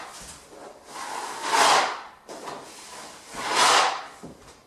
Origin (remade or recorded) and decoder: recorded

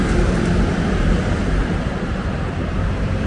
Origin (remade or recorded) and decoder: remade, vocoder, BigVGAN v2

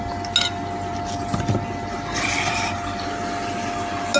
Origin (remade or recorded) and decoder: recorded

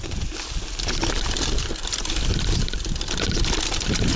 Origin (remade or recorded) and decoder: recorded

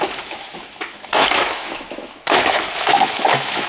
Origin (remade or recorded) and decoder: remade, autoencoder, DAC-VAE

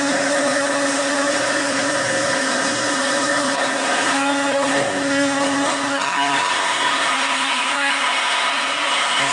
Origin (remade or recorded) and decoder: remade, codec, SNAC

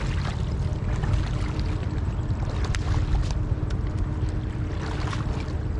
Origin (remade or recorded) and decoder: recorded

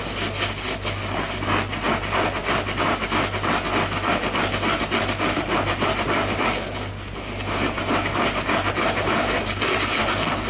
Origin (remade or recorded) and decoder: recorded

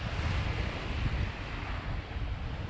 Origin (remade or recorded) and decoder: recorded